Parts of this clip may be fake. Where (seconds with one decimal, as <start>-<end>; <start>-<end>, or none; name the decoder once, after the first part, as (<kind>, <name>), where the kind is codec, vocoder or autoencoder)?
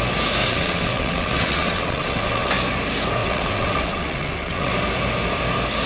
0.4-2.5 (vocoder, WaveNeXt); 3.2-4.7